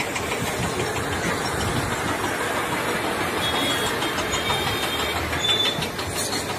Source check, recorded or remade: recorded